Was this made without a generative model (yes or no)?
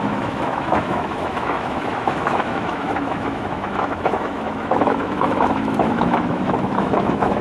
no